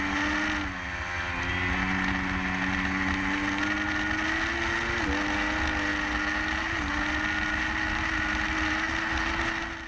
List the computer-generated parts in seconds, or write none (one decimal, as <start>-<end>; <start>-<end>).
none